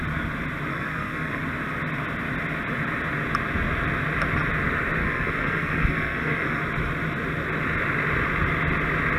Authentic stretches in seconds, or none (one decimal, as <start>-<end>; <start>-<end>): 0.0-0.7; 1.4-5.0; 6.6-9.2